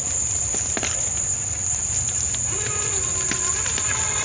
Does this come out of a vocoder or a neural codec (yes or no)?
no